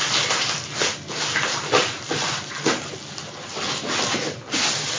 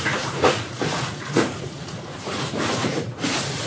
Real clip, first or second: first